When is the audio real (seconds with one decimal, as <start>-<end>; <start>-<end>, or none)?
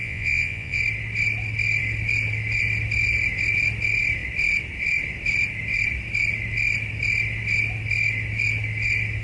0.8-9.2